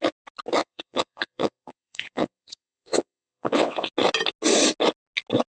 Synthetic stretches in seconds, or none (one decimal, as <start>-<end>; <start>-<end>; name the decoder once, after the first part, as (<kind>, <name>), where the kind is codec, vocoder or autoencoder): 0.6-3.9 (vocoder, WaveNeXt)